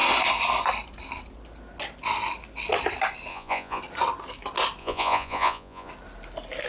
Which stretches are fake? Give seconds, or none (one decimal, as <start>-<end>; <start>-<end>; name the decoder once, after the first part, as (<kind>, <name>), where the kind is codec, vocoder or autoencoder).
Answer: 3.3-3.8 (vocoder, Vocos); 4.8-5.9